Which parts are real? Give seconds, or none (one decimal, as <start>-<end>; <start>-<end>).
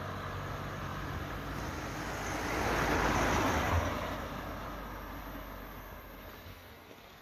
0.0-6.5